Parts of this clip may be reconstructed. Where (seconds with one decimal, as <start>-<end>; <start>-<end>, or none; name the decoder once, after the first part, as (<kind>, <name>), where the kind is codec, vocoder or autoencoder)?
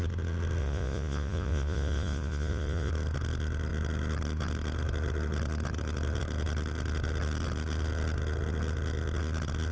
0.6-2.9 (vocoder, Vocos)